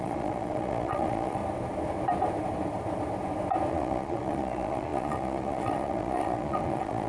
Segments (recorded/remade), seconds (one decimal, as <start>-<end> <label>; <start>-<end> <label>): 0.0-1.4 remade; 1.4-3.7 recorded; 3.7-7.1 remade